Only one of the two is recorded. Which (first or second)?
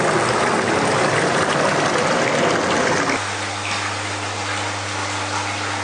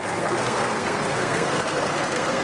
first